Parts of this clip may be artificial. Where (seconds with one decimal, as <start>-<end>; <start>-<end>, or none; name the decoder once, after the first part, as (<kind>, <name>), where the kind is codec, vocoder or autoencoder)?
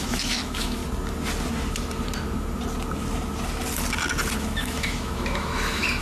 0.0-0.8 (autoencoder, DAC-VAE); 4.4-6.0